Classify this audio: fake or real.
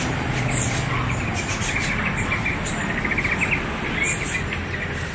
real